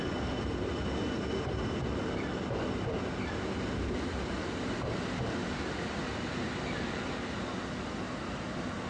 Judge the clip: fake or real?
real